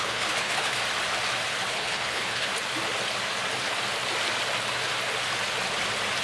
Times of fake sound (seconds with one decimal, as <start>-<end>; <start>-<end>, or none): 0.0-0.8; 1.7-2.5